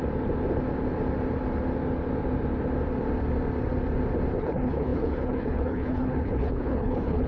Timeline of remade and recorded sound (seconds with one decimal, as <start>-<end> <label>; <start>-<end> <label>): 0.0-4.4 recorded; 4.4-7.3 remade